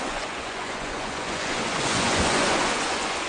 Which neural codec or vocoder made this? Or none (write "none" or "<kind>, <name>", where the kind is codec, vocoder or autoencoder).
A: vocoder, Vocos